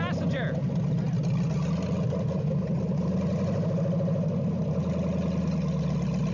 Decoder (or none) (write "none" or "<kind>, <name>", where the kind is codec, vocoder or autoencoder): none